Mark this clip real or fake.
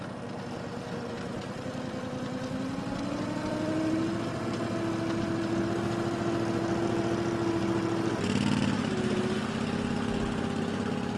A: real